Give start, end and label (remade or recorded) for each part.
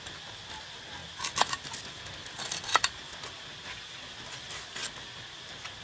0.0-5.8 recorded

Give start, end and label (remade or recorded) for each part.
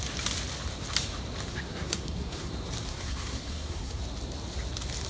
0.0-1.5 recorded; 1.5-2.5 remade; 2.5-2.9 recorded; 2.9-4.0 remade; 4.0-5.1 recorded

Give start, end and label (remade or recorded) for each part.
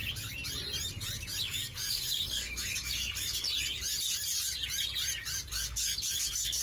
0.0-1.4 recorded; 1.4-3.5 remade; 3.5-5.5 recorded; 5.5-6.6 remade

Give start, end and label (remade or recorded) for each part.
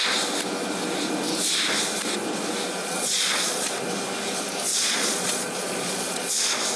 0.0-2.8 recorded; 2.8-3.7 remade; 3.7-4.7 recorded; 4.7-6.3 remade; 6.3-6.8 recorded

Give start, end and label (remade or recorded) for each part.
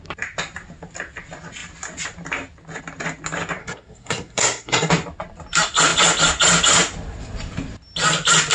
0.0-3.6 recorded; 3.6-4.9 remade; 4.9-8.5 recorded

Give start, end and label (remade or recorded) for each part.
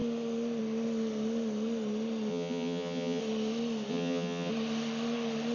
0.0-2.3 recorded; 2.3-3.2 remade; 3.2-3.9 recorded; 3.9-4.5 remade; 4.5-5.5 recorded